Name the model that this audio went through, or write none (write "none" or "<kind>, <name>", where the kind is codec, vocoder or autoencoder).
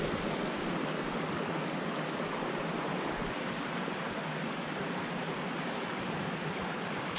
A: none